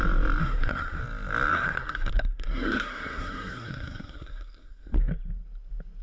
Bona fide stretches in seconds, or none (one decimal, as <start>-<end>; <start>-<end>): 0.0-0.4; 1.0-1.5; 5.1-6.0